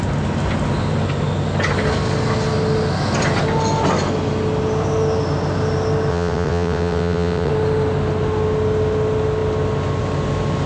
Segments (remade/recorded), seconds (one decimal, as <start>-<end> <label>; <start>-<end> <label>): 0.0-6.1 recorded; 6.1-7.5 remade; 7.5-10.7 recorded